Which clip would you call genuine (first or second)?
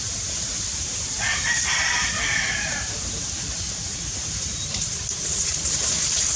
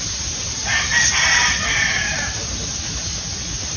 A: second